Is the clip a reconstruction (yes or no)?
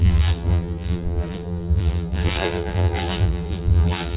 yes